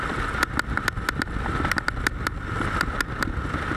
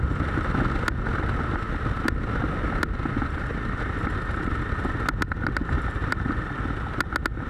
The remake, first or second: first